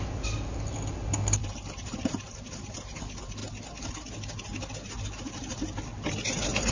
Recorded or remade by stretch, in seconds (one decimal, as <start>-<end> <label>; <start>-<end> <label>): 0.0-1.4 recorded; 1.4-3.0 remade; 3.0-6.7 recorded